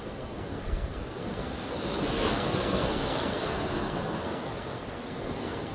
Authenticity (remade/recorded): remade